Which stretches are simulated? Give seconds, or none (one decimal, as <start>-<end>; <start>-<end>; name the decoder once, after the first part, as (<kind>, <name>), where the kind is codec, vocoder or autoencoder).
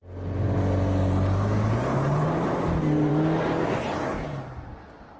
none